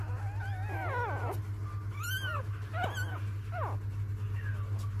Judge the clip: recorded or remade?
recorded